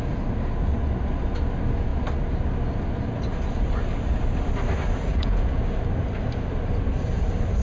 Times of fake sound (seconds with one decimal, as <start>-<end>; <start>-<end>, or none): 5.1-5.6